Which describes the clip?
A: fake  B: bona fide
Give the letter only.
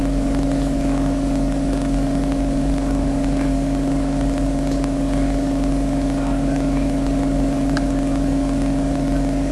A